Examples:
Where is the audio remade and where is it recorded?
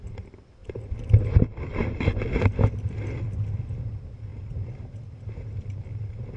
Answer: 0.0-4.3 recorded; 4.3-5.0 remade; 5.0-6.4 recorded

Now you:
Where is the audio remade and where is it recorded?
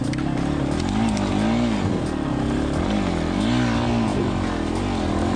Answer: 0.0-4.1 recorded; 4.1-4.7 remade; 4.7-5.4 recorded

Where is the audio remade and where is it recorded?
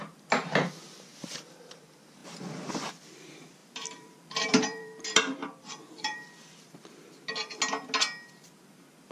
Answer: 0.0-3.6 recorded; 3.6-7.6 remade; 7.6-9.1 recorded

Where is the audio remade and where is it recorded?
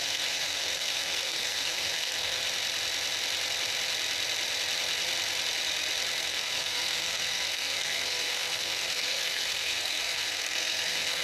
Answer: 0.0-2.4 remade; 2.4-6.2 recorded; 6.2-11.2 remade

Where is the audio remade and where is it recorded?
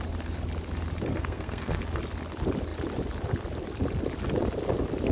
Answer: 0.0-1.1 recorded; 1.1-1.8 remade; 1.8-5.1 recorded